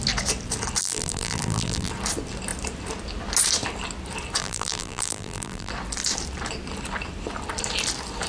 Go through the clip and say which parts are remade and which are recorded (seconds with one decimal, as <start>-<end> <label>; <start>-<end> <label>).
0.0-0.8 recorded; 0.8-1.9 remade; 1.9-4.4 recorded; 4.4-5.7 remade; 5.7-8.3 recorded